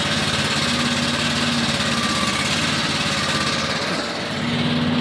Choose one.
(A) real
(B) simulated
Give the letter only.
A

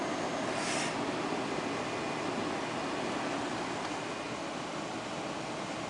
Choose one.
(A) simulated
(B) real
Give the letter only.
B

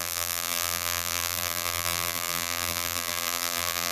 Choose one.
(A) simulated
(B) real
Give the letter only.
A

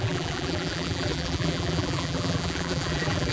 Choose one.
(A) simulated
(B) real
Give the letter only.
A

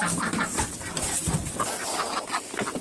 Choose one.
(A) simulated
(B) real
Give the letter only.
B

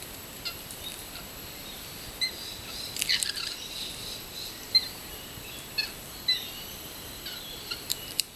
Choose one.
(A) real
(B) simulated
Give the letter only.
B